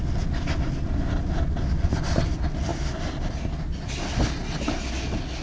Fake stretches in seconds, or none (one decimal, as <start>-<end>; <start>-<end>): none